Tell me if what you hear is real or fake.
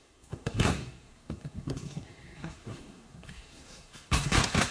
fake